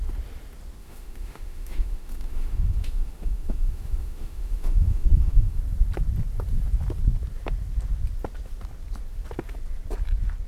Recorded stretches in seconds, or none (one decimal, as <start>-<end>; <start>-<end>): 0.0-0.8; 5.6-10.5